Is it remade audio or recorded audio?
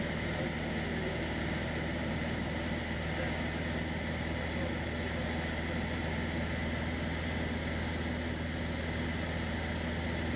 recorded